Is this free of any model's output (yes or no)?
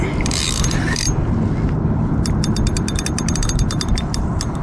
no